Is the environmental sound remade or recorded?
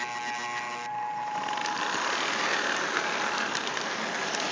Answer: recorded